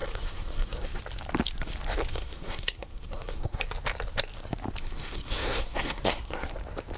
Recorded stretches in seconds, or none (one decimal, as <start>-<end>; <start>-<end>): 1.0-2.1; 3.6-4.8; 6.5-7.0